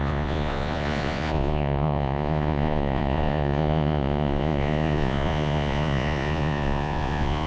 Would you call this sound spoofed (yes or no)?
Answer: yes